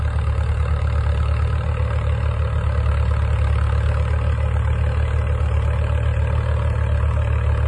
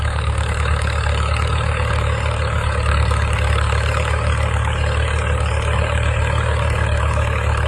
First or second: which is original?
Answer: first